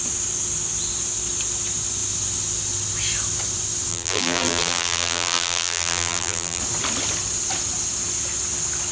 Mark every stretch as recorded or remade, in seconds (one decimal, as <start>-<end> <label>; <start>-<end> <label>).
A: 0.0-3.9 recorded; 3.9-6.6 remade; 6.6-8.9 recorded